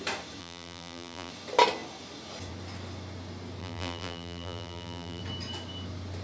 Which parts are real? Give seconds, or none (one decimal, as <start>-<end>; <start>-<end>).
0.0-0.4; 1.3-3.6; 5.2-6.2